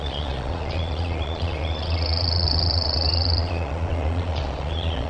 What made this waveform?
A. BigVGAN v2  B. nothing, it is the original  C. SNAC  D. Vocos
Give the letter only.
D